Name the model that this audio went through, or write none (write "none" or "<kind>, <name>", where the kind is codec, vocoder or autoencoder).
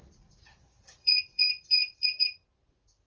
vocoder, Vocos